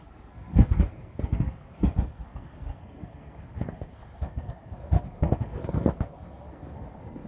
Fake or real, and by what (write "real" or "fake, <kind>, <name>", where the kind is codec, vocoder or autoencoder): fake, codec, SNAC